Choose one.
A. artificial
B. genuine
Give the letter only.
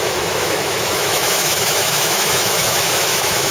A